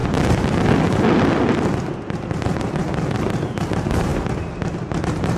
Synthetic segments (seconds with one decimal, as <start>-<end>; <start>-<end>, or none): 3.2-5.4